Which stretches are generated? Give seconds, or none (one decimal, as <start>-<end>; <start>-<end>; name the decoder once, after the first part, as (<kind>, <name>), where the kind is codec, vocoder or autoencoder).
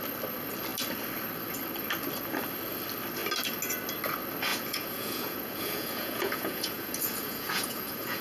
4.5-8.2 (vocoder, Vocos)